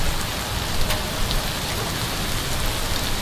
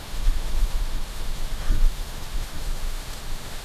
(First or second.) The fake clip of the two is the second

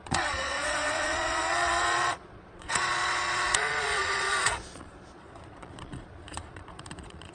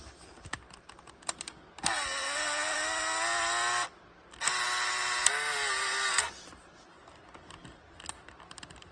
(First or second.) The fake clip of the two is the first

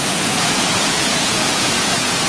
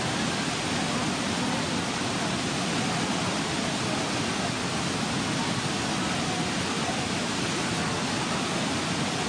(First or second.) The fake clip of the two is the first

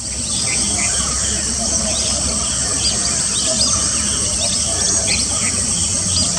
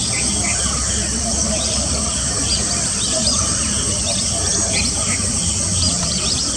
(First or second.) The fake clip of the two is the second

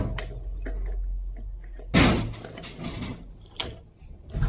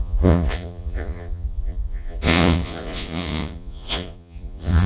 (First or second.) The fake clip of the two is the second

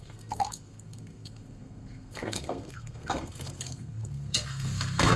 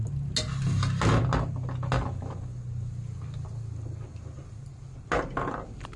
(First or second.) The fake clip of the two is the first